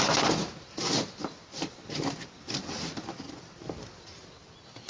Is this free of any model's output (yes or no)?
yes